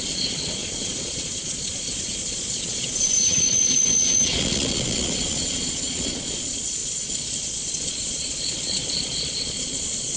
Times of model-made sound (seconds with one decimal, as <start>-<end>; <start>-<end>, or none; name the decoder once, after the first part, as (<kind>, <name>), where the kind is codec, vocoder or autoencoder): 0.0-10.2 (vocoder, Vocos)